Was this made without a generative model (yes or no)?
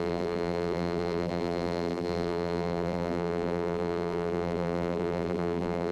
no